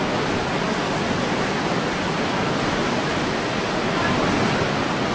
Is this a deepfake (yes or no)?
no